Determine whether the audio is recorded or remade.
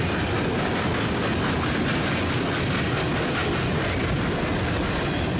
recorded